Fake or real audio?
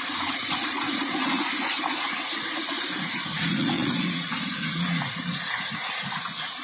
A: fake